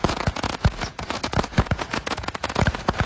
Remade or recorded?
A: remade